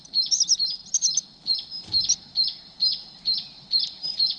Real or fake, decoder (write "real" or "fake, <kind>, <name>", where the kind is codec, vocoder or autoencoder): real